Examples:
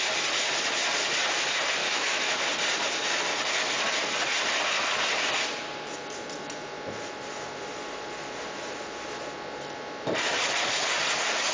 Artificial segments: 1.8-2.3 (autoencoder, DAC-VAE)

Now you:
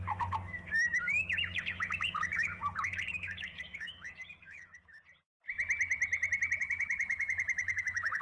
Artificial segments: 0.0-5.0 (autoencoder, DAC-VAE); 6.6-8.2

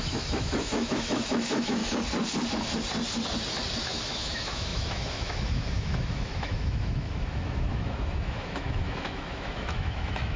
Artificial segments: 0.0-1.8 (autoencoder, DAC-VAE); 3.8-10.4

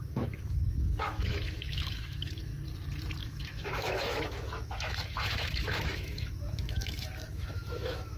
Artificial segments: 0.0-2.5 (autoencoder, DAC-VAE); 3.2-8.2

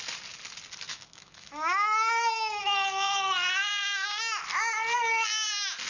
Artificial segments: 0.9-2.6 (autoencoder, DAC-VAE); 3.8-4.4

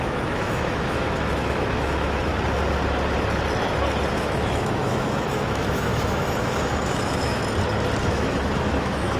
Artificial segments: 0.0-2.3 (autoencoder, DAC-VAE); 4.1-7.4; 8.0-9.2

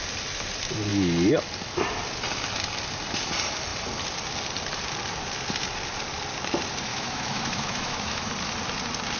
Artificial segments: 6.9-8.3 (autoencoder, DAC-VAE)